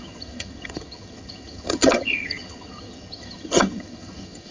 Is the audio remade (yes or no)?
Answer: yes